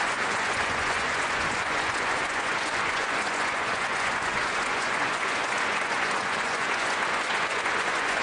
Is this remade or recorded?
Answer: remade